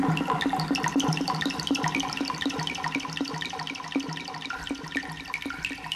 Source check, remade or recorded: recorded